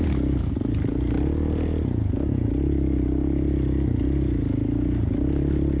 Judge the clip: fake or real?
real